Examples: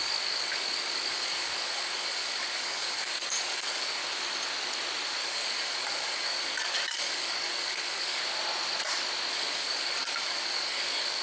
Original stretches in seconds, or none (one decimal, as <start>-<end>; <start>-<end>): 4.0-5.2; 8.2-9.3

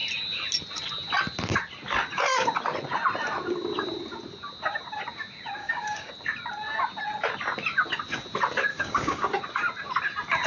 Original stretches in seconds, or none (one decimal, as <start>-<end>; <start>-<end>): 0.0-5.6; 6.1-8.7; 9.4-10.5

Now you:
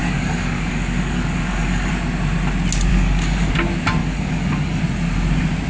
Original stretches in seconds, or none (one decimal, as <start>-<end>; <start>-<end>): 1.9-2.9; 3.5-4.0; 4.8-5.7

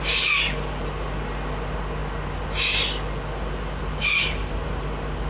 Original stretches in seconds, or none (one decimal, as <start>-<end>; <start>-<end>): 0.0-5.3

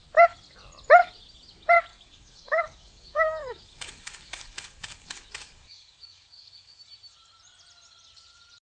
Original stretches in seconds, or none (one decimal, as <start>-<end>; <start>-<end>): 0.0-1.9; 6.8-8.6

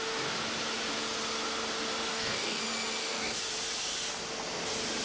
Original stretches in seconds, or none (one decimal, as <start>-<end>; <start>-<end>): 0.0-2.1; 2.6-3.0; 3.5-5.0

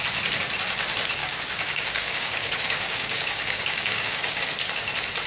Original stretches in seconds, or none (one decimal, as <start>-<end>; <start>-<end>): 0.0-1.2; 4.4-5.3